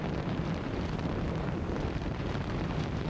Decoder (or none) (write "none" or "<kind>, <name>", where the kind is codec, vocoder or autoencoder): vocoder, BigVGAN v2